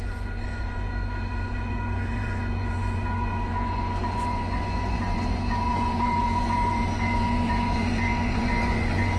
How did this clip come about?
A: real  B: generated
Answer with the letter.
B